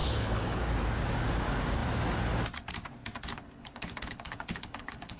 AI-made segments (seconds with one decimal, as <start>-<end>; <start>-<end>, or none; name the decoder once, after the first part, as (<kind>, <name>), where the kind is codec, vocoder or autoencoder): 0.0-0.6 (codec, HILCodec); 3.3-5.2